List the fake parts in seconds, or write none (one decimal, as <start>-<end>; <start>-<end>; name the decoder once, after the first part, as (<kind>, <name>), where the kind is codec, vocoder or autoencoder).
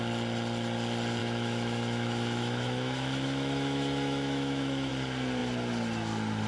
1.2-4.9 (autoencoder, DAC-VAE)